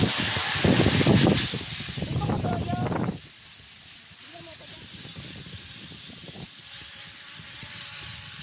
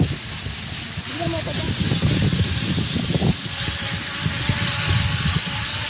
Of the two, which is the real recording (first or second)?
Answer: second